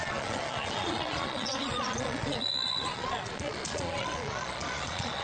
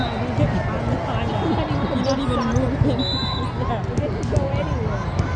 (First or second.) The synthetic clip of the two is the first